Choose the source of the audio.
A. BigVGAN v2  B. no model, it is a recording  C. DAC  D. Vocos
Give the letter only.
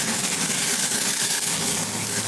C